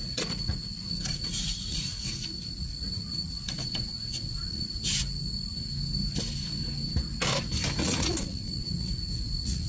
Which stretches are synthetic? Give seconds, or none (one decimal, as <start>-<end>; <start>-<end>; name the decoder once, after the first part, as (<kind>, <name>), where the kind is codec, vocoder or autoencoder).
0.0-4.8 (vocoder, Vocos); 7.8-9.7